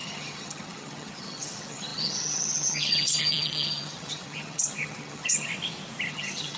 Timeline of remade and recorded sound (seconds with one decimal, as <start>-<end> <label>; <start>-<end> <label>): 0.0-5.5 remade; 5.5-6.1 recorded; 6.1-6.6 remade